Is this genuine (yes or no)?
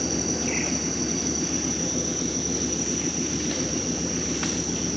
yes